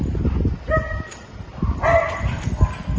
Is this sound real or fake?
real